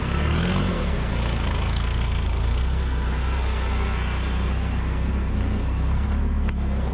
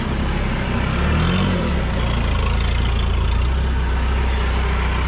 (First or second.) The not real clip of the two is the first